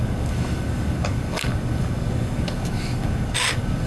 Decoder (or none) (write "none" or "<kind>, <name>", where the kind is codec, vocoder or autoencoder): codec, DAC